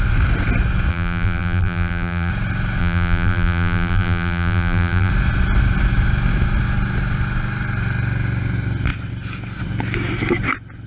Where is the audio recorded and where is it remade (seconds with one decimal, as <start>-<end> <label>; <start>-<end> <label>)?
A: 0.0-0.9 recorded; 0.9-2.3 remade; 2.3-2.8 recorded; 2.8-5.1 remade; 5.1-10.9 recorded